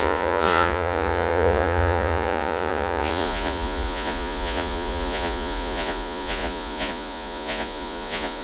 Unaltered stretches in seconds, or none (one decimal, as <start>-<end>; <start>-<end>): none